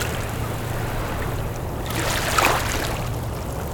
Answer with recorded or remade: remade